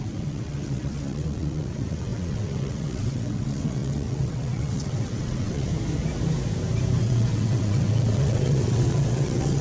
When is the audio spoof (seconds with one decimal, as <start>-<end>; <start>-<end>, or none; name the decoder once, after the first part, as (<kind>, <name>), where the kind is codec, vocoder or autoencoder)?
0.0-5.7 (vocoder, WaveNeXt); 7.0-9.6